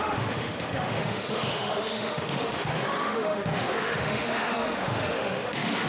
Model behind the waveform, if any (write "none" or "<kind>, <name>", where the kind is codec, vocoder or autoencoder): autoencoder, DAC-VAE